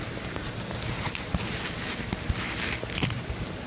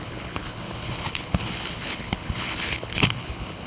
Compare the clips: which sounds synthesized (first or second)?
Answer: second